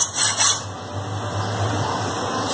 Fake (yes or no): no